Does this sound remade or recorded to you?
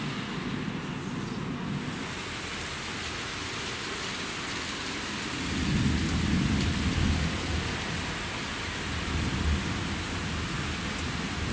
recorded